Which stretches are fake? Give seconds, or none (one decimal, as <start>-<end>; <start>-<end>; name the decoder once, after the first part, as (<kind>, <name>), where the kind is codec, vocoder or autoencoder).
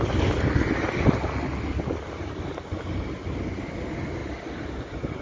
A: none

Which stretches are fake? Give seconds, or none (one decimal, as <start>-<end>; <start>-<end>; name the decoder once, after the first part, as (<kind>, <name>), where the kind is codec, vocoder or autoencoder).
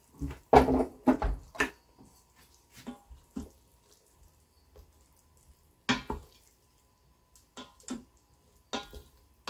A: 0.9-1.7 (vocoder, BigVGAN v2)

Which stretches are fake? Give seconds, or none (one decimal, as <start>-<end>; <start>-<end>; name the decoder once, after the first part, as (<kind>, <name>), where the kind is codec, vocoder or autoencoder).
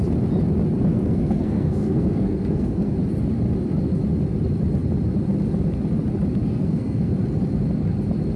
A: 0.9-2.9 (codec, SNAC); 6.5-7.1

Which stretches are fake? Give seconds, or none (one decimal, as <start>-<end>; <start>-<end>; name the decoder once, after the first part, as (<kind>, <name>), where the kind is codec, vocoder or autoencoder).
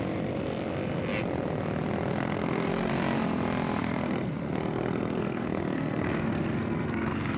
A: 2.1-2.9 (codec, SNAC); 3.8-7.4